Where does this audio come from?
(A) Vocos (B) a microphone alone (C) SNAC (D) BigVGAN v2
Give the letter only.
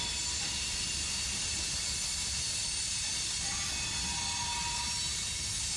B